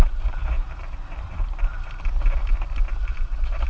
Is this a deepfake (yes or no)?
no